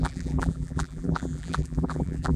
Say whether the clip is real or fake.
fake